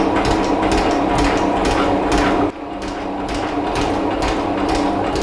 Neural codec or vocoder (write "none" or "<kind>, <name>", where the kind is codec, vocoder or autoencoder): none